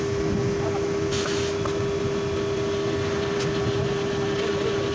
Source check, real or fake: real